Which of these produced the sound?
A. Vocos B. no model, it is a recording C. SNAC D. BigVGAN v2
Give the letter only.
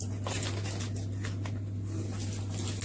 B